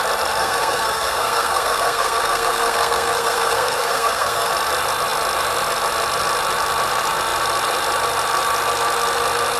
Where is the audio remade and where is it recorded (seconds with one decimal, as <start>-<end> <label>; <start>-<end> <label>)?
0.0-0.4 recorded; 0.4-4.5 remade; 4.5-9.6 recorded